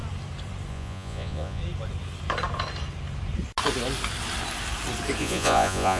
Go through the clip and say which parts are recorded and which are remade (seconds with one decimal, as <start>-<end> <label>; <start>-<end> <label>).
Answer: 0.0-0.7 recorded; 0.7-1.6 remade; 1.6-5.2 recorded; 5.2-6.0 remade